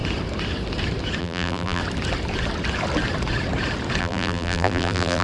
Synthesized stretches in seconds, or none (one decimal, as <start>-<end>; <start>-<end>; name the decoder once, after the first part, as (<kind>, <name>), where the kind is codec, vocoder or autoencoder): 1.2-1.8 (vocoder, BigVGAN v2); 4.0-5.2